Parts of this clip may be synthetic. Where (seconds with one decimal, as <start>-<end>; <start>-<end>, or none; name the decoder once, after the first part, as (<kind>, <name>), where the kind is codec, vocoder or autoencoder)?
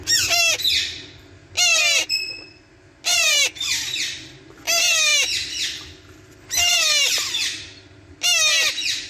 1.7-2.6 (vocoder, BigVGAN v2); 3.1-4.4